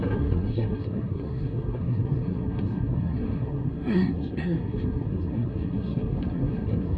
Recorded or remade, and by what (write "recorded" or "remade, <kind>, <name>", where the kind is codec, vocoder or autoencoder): remade, codec, SNAC